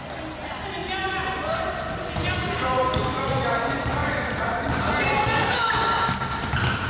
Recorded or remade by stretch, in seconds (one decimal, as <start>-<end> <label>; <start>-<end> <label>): 0.0-6.9 recorded